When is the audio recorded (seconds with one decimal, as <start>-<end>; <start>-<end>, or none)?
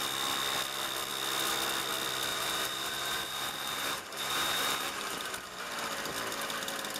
0.0-2.3; 5.3-7.0